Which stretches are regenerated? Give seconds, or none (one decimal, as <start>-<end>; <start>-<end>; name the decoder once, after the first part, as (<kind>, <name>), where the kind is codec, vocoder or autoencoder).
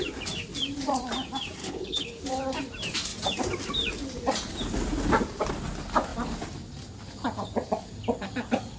1.6-2.2 (codec, HILCodec)